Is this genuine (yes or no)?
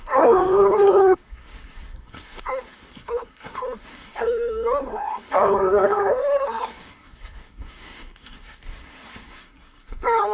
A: no